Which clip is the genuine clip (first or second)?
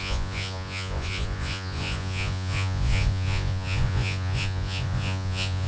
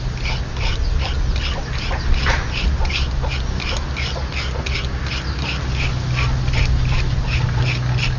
second